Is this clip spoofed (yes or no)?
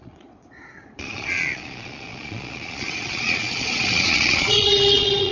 yes